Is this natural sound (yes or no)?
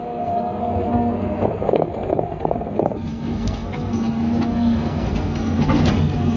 no